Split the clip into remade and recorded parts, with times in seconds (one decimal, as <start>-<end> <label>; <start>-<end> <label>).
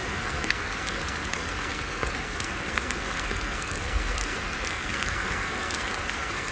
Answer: 0.0-6.5 remade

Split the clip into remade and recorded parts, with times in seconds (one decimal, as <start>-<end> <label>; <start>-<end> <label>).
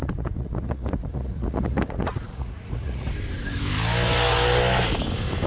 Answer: 0.0-3.1 remade; 3.1-5.5 recorded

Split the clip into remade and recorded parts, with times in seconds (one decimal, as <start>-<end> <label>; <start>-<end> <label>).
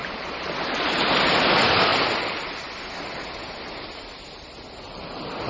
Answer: 0.0-5.5 recorded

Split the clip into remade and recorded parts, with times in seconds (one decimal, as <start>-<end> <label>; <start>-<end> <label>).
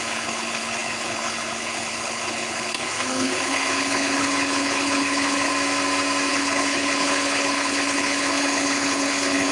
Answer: 0.0-5.5 remade; 5.5-6.3 recorded; 6.3-9.5 remade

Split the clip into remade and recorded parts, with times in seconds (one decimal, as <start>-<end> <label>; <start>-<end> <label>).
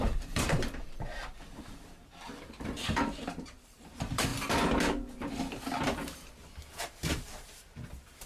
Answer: 0.0-4.3 remade; 4.3-6.8 recorded; 6.8-8.3 remade